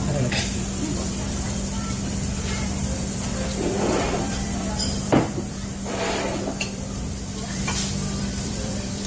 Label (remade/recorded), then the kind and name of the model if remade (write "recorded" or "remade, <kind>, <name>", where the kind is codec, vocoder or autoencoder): remade, vocoder, BigVGAN v2